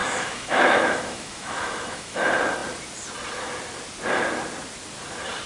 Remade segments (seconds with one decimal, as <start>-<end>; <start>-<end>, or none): 0.0-2.2